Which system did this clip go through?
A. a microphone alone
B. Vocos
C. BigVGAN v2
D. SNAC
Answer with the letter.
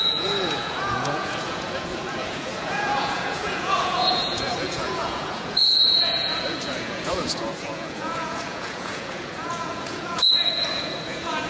B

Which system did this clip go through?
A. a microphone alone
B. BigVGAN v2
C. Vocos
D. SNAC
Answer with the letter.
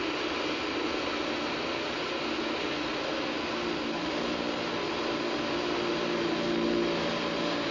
A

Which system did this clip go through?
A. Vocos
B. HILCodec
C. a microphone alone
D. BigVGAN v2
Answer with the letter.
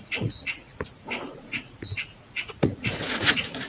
A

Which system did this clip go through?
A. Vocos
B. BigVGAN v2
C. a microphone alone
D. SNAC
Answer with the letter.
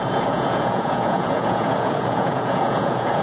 A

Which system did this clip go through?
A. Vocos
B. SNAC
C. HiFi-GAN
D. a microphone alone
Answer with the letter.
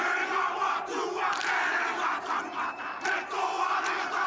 D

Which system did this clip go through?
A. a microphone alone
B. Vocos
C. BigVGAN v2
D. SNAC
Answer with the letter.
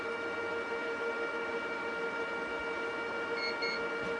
A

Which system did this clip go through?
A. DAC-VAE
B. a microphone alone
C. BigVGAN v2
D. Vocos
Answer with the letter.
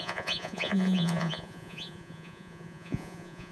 D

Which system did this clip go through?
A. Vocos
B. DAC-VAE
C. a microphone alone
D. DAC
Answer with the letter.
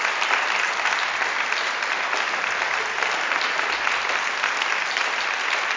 C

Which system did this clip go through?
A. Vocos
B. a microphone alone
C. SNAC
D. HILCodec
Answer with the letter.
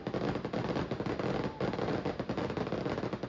B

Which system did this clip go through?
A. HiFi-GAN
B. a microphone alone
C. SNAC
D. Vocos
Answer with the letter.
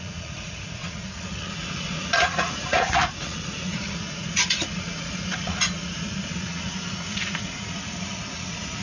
D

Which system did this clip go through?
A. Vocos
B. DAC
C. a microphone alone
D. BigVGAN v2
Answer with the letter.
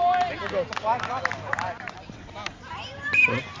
C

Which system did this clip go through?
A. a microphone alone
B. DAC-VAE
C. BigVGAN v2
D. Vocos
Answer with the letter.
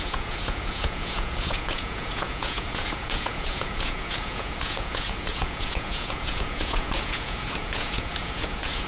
D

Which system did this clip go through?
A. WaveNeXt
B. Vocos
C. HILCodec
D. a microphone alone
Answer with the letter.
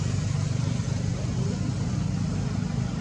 D